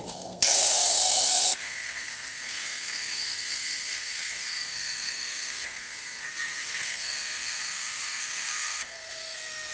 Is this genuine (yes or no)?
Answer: no